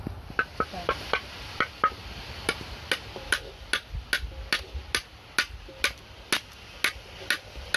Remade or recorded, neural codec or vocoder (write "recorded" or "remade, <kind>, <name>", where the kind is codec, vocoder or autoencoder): recorded